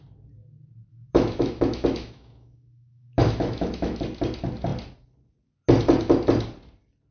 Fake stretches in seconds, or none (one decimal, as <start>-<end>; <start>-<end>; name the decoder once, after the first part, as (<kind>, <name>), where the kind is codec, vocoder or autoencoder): 0.9-4.0 (autoencoder, DAC-VAE)